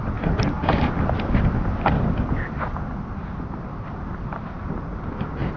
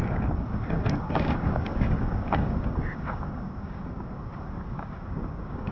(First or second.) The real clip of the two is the first